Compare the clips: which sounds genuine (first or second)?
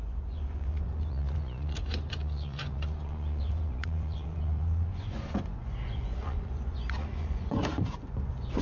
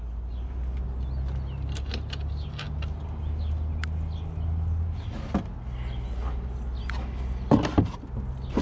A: second